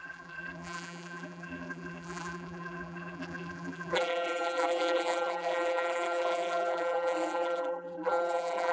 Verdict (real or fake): fake